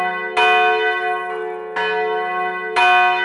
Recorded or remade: recorded